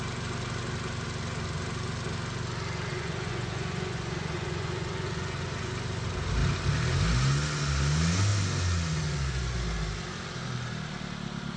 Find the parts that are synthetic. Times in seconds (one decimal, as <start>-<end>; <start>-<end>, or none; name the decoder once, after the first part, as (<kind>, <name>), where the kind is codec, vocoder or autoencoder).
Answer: 2.9-5.7 (vocoder, Vocos)